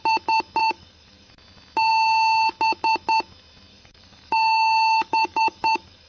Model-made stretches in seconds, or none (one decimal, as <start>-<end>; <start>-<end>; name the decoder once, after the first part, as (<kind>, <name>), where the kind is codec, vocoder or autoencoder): 0.6-1.3 (codec, DAC); 3.7-6.1